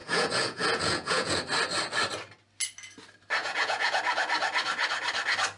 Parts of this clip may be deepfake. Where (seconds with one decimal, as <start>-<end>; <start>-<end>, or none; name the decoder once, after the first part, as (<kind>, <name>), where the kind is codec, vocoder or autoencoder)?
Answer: 0.0-1.4 (vocoder, Vocos); 3.4-4.0